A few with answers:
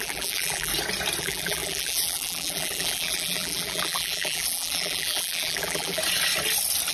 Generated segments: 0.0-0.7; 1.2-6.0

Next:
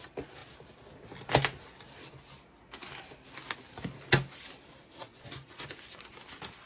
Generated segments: 5.1-6.0

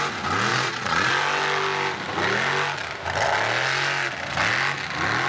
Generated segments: 0.5-1.1

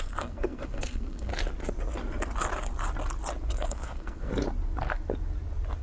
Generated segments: 0.0-1.3; 3.5-4.3